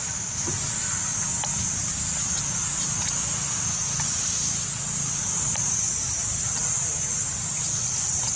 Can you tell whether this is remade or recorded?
recorded